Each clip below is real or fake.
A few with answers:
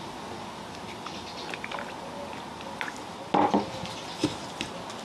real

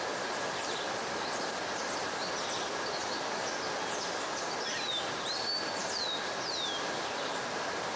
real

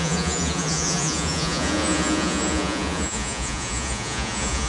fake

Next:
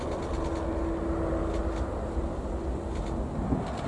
real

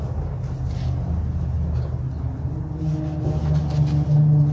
real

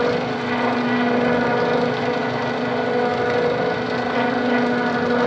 real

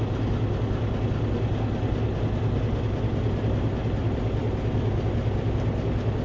real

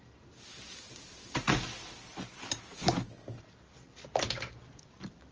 real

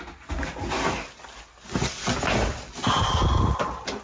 real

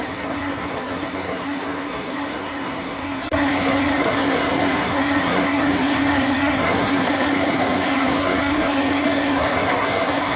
fake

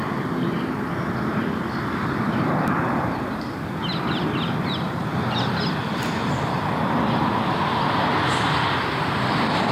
fake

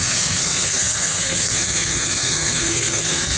fake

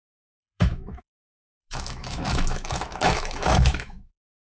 fake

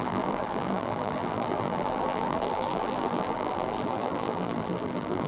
fake